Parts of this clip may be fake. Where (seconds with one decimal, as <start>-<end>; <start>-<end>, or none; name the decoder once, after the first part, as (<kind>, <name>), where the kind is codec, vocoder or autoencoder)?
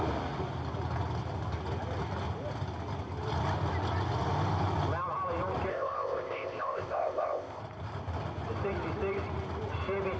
5.7-7.6 (codec, ZipCodec)